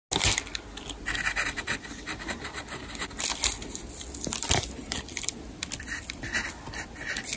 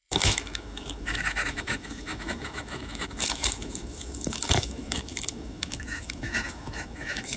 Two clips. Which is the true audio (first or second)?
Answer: first